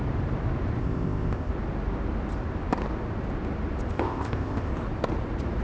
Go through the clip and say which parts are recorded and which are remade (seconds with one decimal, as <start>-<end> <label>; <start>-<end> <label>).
0.0-0.8 recorded; 0.8-1.5 remade; 1.5-3.9 recorded; 3.9-4.7 remade; 4.7-5.6 recorded